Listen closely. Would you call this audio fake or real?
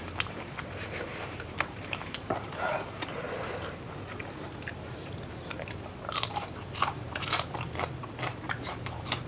fake